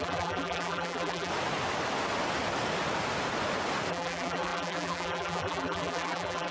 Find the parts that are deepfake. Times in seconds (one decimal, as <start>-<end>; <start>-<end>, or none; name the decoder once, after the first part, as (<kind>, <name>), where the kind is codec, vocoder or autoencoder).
0.0-1.3 (vocoder, BigVGAN v2); 3.9-6.5